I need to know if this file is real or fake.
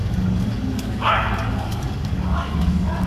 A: fake